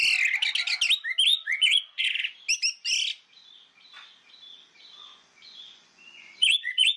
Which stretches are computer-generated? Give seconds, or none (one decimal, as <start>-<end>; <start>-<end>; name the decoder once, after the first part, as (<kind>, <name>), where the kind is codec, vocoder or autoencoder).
1.3-2.1 (vocoder, Vocos); 5.0-7.0

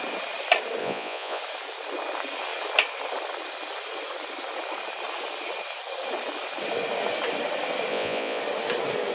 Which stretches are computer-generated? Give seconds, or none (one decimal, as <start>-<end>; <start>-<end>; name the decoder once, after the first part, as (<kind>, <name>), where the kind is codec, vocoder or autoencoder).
0.8-1.4 (vocoder, Vocos); 7.9-8.4

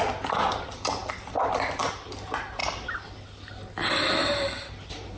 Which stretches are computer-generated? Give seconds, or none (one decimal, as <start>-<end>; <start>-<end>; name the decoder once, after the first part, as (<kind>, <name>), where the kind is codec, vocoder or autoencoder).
none

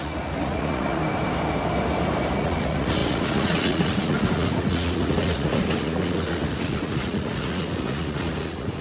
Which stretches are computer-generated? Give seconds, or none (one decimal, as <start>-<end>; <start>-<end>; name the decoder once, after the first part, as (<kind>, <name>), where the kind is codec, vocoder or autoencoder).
0.0-1.0 (vocoder, Vocos); 2.4-8.8

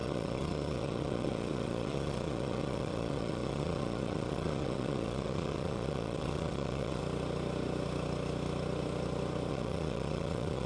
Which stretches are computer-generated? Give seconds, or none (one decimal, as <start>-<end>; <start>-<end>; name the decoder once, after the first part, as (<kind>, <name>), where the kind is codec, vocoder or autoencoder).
0.0-7.0 (vocoder, Vocos); 9.5-10.7

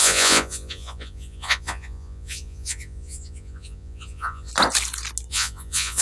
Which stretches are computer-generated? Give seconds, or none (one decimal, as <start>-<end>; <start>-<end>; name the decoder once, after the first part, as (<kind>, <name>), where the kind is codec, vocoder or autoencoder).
0.0-4.5 (vocoder, Vocos); 5.3-6.0